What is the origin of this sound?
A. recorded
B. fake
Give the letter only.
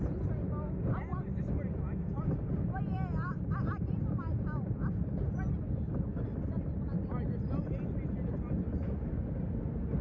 A